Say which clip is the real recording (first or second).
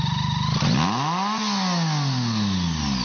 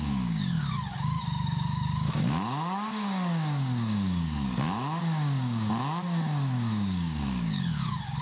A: first